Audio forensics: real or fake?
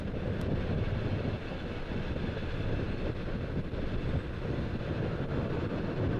real